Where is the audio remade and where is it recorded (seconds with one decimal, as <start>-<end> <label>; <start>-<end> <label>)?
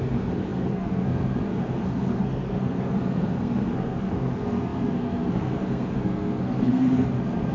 0.0-7.5 remade